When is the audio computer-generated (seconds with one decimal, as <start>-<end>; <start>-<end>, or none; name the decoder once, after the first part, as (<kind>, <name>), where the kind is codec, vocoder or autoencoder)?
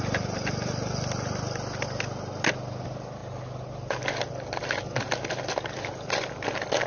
none